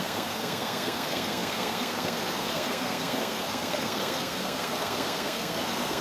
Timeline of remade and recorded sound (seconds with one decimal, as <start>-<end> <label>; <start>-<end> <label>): 0.0-6.0 remade